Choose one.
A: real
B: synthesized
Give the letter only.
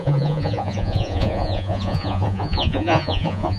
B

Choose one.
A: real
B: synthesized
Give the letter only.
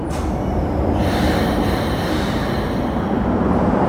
A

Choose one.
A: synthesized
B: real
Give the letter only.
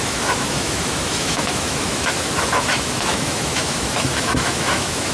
A